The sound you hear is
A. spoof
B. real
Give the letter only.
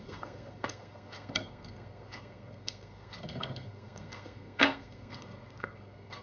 A